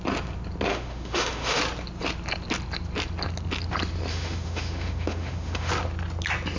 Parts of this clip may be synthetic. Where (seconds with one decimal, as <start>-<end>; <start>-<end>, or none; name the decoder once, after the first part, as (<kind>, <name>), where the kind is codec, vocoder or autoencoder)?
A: 0.7-1.6 (autoencoder, DAC-VAE); 4.1-5.7

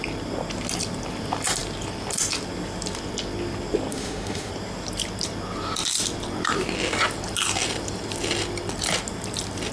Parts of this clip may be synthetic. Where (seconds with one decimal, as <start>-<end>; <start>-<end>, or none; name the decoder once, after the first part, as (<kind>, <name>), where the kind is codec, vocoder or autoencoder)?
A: 3.9-4.5 (autoencoder, DAC-VAE)

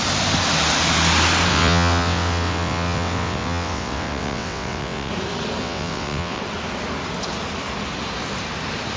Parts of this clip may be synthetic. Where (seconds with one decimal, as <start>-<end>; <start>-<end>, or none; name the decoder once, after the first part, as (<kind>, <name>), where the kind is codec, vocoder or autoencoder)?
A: 1.5-5.1 (vocoder, WaveNeXt); 5.6-6.4

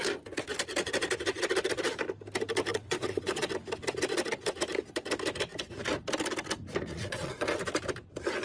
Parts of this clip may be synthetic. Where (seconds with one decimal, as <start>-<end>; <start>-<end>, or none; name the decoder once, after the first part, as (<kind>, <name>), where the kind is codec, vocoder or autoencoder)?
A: 2.7-3.5 (vocoder, WaveNeXt); 6.9-7.6

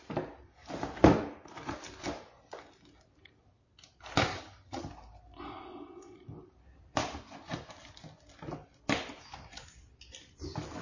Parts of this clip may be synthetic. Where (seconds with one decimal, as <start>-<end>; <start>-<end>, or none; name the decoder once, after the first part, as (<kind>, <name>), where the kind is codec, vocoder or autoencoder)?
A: 4.3-4.9 (vocoder, HiFi-GAN)

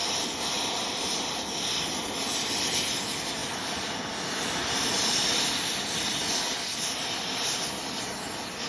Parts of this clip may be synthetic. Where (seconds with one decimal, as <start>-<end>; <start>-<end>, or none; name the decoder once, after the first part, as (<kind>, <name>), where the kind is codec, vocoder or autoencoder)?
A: 3.4-4.9 (vocoder, BigVGAN v2); 6.2-8.1

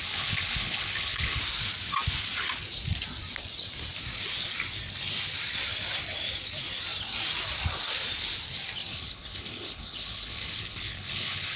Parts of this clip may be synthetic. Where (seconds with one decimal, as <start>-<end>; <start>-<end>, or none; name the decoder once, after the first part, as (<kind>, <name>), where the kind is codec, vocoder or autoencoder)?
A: 0.0-1.4 (codec, HILCodec); 8.9-11.6